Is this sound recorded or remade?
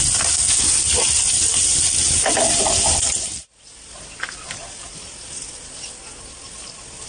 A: recorded